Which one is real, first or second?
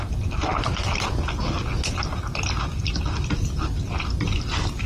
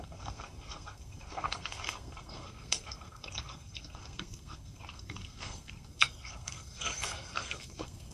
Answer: first